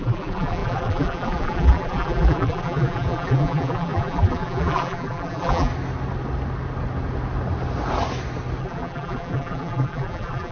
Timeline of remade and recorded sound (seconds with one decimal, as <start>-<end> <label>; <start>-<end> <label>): 0.0-5.7 remade; 5.7-8.6 recorded; 8.6-10.5 remade